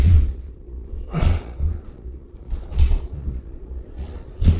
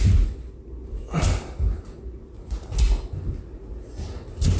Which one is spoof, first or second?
first